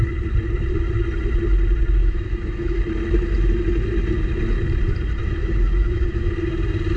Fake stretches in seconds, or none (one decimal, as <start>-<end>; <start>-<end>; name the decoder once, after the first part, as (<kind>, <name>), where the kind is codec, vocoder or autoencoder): 2.0-2.8 (autoencoder, DAC-VAE); 5.2-6.3